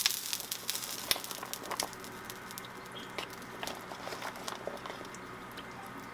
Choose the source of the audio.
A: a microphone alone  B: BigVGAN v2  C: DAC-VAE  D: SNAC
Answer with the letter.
A